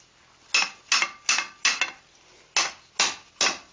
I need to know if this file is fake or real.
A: real